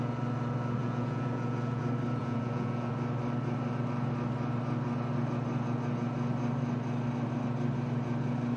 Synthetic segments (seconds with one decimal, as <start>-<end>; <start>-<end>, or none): 0.8-1.8; 2.2-2.9